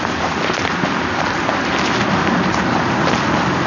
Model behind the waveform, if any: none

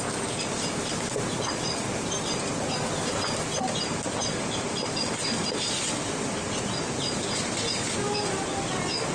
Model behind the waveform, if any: none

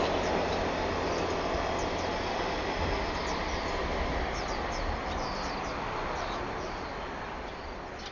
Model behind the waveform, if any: none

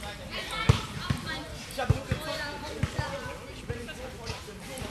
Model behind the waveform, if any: none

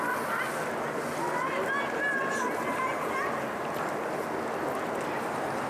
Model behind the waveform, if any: none